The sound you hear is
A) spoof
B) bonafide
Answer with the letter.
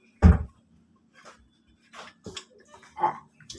A